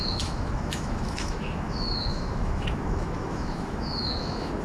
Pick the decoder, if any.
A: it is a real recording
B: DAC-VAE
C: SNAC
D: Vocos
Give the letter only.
B